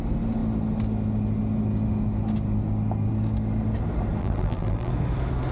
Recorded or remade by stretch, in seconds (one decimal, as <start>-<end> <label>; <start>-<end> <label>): 0.0-4.2 recorded; 4.2-4.9 remade; 4.9-5.5 recorded